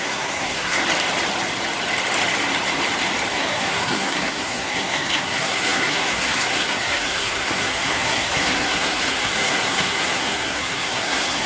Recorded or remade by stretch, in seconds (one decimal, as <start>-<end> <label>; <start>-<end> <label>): 0.0-0.8 remade; 0.8-3.3 recorded; 3.3-11.5 remade